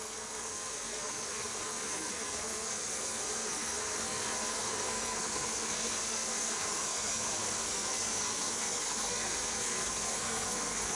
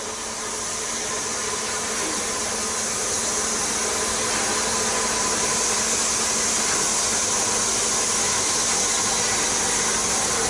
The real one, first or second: second